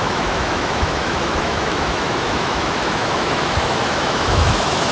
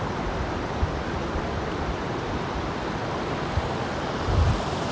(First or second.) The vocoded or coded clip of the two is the first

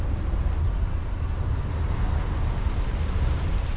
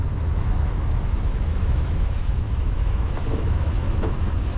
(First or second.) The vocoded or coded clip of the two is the second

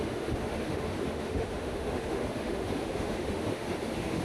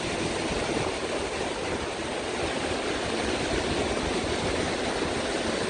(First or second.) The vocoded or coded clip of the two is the first